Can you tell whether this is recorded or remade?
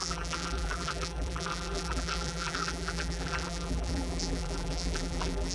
remade